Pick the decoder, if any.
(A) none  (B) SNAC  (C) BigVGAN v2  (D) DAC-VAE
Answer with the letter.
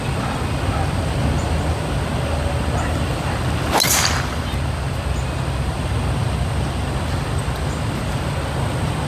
A